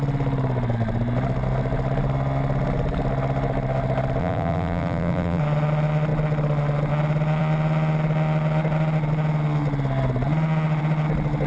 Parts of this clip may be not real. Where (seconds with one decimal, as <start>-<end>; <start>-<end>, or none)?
4.2-5.4